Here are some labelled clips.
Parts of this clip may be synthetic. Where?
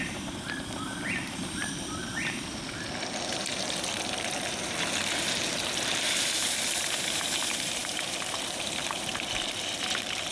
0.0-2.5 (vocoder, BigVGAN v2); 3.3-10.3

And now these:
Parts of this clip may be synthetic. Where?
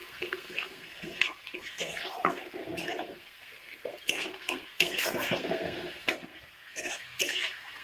0.0-7.8 (codec, SNAC)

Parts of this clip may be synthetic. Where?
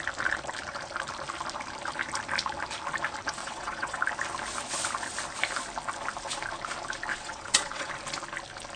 3.4-4.0 (vocoder, WaveNeXt); 7.1-7.9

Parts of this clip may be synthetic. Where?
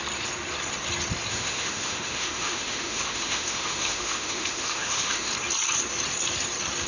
1.3-5.3 (autoencoder, DAC-VAE)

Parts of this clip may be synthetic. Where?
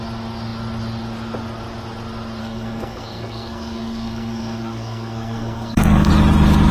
2.4-6.1 (codec, SNAC)